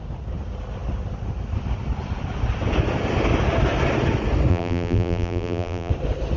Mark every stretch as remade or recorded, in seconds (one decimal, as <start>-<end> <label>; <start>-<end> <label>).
0.0-4.5 recorded; 4.5-5.9 remade; 5.9-6.4 recorded